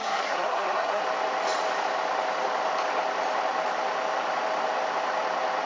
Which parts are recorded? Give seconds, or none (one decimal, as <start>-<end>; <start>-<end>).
1.0-5.7